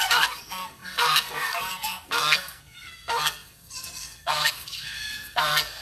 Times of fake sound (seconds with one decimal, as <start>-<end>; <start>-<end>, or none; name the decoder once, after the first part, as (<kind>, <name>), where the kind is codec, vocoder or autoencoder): 0.0-5.8 (codec, SNAC)